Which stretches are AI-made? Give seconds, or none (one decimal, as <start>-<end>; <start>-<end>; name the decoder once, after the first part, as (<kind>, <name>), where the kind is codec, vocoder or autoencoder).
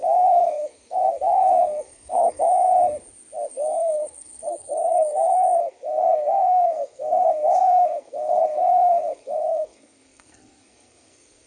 0.0-2.7 (codec, SNAC); 3.5-11.5